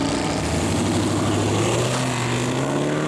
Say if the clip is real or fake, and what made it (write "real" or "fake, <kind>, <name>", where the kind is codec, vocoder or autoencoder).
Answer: real